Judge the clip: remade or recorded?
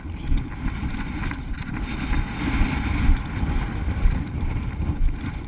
recorded